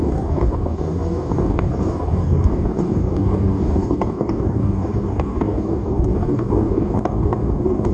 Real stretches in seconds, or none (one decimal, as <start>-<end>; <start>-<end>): none